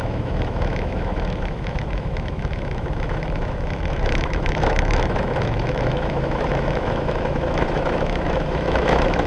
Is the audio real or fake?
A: fake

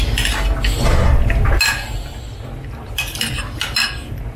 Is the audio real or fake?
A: real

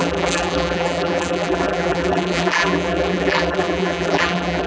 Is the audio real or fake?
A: fake